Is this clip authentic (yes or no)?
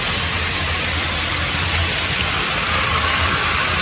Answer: yes